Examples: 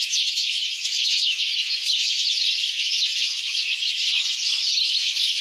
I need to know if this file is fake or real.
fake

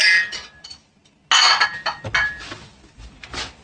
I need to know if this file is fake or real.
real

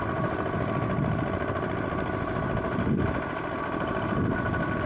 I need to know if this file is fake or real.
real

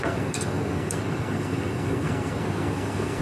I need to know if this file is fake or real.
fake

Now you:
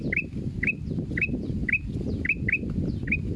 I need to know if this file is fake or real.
real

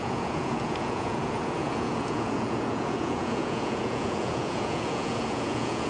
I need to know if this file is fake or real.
fake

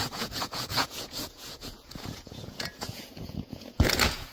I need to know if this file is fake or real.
fake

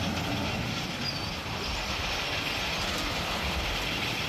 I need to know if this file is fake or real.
real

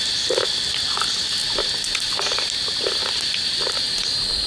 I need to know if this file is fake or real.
real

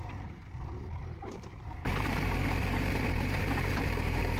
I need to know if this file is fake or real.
fake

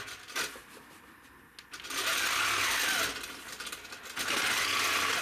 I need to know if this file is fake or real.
real